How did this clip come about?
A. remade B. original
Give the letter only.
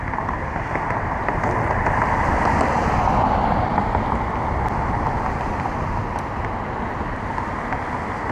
B